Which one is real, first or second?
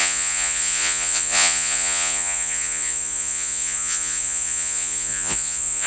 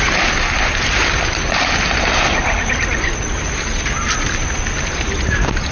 second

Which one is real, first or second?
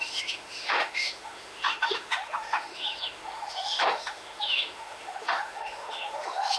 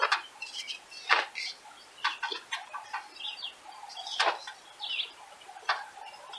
second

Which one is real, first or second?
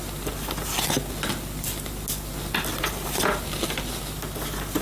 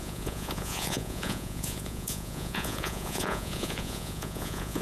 first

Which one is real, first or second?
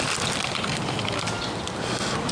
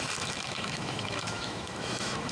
first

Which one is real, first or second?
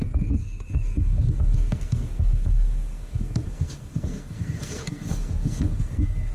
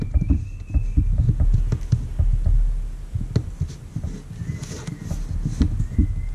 second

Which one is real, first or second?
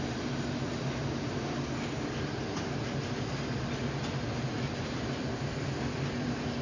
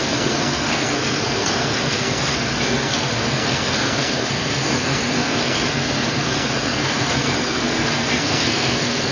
first